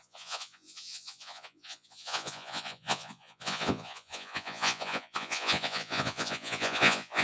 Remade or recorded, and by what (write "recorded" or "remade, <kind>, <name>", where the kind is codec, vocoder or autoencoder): remade, vocoder, Vocos